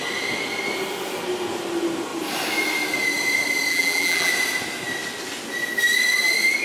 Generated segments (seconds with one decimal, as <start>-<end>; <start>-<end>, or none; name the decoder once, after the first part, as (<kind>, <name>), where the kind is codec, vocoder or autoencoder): 3.7-4.3 (vocoder, BigVGAN v2)